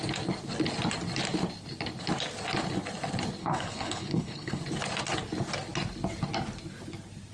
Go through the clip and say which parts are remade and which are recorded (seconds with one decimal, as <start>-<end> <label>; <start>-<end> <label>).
0.0-3.4 recorded; 3.4-4.6 remade; 4.6-7.3 recorded

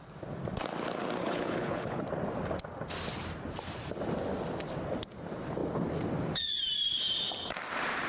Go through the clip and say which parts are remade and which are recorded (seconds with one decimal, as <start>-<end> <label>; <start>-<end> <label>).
0.0-1.2 recorded; 1.2-2.0 remade; 2.0-8.1 recorded

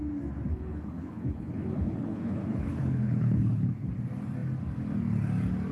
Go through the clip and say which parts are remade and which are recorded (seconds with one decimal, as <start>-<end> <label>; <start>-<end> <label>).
0.0-0.5 recorded; 0.5-3.9 remade; 3.9-5.7 recorded

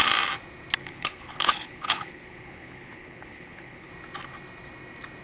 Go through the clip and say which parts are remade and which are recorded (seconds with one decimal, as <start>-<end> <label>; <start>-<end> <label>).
0.0-0.8 recorded; 0.8-3.9 remade; 3.9-5.2 recorded

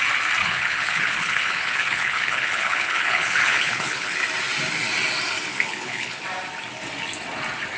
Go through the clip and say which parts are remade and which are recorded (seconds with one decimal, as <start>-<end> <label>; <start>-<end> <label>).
0.0-0.4 recorded; 0.4-4.2 remade; 4.2-5.5 recorded; 5.5-6.2 remade; 6.2-7.8 recorded

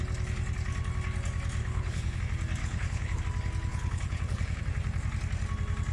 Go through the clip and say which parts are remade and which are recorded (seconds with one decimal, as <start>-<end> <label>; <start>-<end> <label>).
0.0-1.6 recorded; 1.6-2.2 remade; 2.2-2.6 recorded; 2.6-3.2 remade; 3.2-3.7 recorded; 3.7-4.6 remade; 4.6-5.9 recorded